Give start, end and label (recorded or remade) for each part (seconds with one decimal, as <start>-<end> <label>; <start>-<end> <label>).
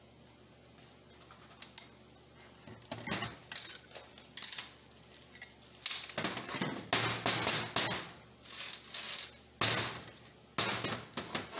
0.0-11.6 recorded